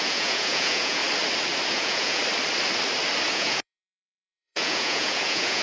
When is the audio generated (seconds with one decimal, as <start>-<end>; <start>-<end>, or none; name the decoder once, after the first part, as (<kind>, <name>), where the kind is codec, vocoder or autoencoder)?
0.0-1.0 (vocoder, Vocos); 1.7-2.2; 3.3-5.6